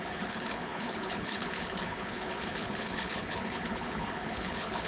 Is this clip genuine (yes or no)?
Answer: no